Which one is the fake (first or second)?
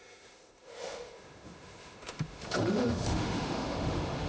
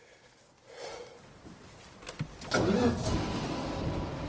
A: first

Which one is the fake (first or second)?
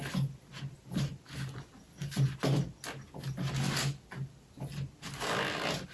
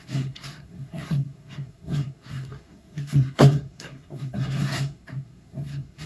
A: second